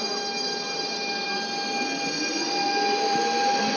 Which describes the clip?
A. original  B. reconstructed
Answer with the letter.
A